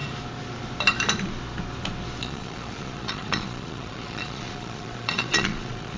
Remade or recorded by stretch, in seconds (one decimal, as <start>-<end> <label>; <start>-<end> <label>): 0.0-2.2 recorded; 2.2-6.0 remade